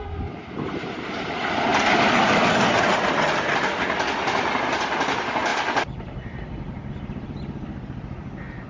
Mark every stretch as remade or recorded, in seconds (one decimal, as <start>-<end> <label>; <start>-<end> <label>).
0.0-1.7 remade; 1.7-3.8 recorded; 3.8-5.5 remade; 5.5-6.9 recorded; 6.9-8.7 remade